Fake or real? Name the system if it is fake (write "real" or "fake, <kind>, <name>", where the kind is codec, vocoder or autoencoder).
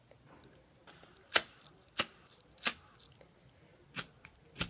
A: real